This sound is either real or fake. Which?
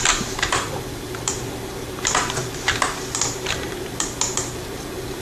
fake